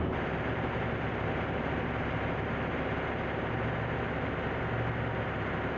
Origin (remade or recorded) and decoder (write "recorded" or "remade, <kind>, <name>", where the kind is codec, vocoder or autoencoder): recorded